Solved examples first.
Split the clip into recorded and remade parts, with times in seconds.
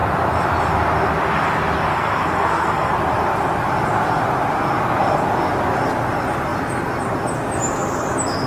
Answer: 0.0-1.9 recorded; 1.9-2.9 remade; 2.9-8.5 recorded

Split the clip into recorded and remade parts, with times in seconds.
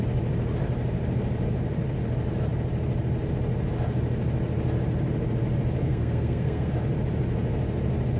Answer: 0.0-5.8 recorded; 5.8-6.7 remade; 6.7-8.2 recorded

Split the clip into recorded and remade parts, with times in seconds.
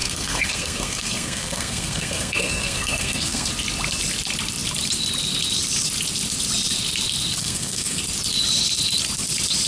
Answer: 0.0-3.5 remade; 3.5-7.4 recorded; 7.4-8.0 remade; 8.0-9.7 recorded